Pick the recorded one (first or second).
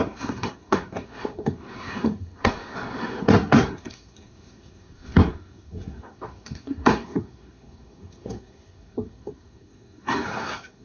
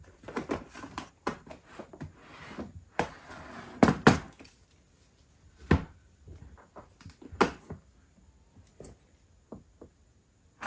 second